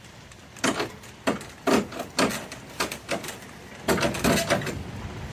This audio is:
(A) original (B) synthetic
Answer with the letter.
A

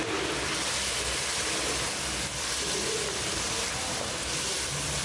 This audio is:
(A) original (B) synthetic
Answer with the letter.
A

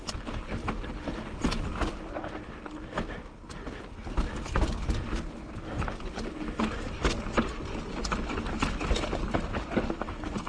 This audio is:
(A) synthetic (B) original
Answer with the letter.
B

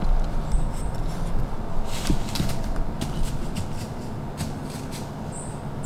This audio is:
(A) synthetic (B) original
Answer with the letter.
B